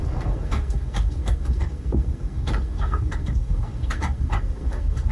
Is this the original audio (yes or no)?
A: no